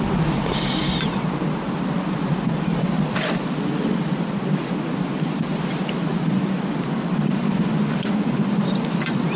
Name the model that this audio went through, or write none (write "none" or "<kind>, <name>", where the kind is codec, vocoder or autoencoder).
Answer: vocoder, BigVGAN v2